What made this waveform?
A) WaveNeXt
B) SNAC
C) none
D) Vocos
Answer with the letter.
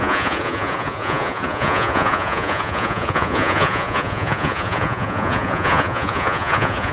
D